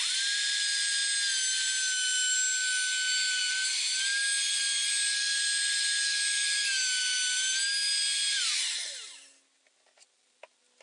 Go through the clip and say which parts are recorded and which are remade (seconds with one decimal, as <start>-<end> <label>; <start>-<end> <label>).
0.0-10.8 recorded